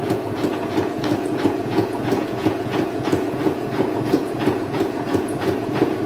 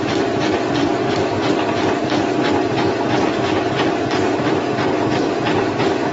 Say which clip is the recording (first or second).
second